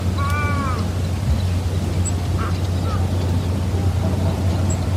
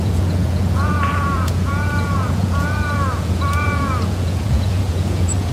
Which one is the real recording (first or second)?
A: first